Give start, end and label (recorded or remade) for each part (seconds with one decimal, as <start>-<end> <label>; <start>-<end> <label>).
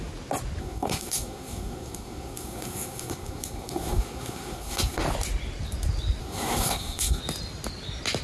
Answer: 0.0-0.6 recorded; 0.6-5.0 remade; 5.0-6.2 recorded; 6.2-7.2 remade; 7.2-8.2 recorded